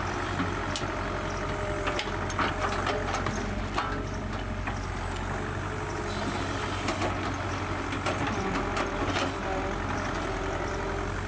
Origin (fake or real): real